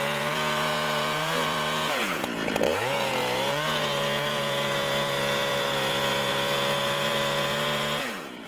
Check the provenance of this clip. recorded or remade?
remade